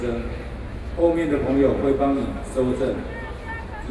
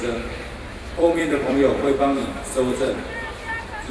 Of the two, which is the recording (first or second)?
first